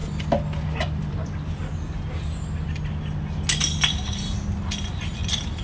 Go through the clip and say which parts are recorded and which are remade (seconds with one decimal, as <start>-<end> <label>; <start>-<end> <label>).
0.0-1.0 recorded; 1.0-1.6 remade; 1.6-5.0 recorded; 5.0-5.6 remade

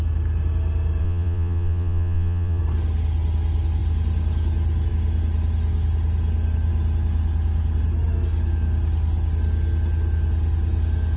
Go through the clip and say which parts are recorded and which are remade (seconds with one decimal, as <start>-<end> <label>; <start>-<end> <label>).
0.0-1.0 recorded; 1.0-2.6 remade; 2.6-11.2 recorded